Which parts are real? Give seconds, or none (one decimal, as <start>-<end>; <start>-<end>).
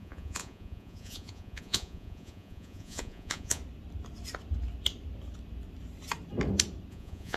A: 3.6-6.9